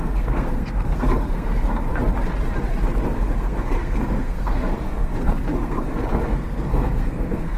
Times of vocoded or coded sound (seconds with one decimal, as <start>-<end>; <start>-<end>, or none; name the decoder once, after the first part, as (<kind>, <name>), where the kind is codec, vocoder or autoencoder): 0.0-1.9 (codec, SNAC); 3.1-7.6

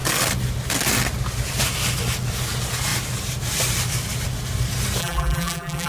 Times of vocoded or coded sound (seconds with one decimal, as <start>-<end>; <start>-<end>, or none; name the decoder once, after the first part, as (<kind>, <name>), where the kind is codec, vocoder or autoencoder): 5.0-5.9 (vocoder, BigVGAN v2)

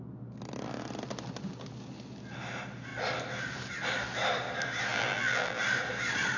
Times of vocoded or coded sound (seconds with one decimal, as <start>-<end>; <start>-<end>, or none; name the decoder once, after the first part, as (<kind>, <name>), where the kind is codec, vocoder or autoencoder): 4.9-5.6 (vocoder, BigVGAN v2)

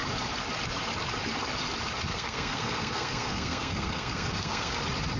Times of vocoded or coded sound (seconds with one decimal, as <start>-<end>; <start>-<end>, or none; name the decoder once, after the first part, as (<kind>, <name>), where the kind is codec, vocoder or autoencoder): 2.1-4.8 (codec, SNAC)

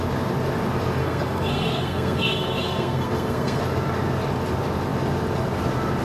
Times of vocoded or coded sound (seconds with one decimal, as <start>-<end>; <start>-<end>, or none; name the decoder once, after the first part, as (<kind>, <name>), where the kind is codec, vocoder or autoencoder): 1.0-3.6 (codec, SNAC)